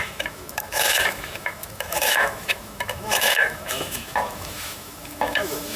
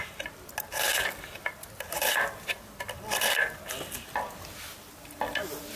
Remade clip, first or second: first